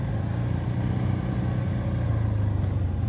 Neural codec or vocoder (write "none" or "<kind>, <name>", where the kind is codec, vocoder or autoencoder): none